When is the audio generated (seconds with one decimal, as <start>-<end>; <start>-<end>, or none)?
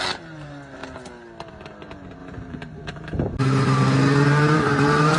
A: 0.0-0.8; 1.5-5.2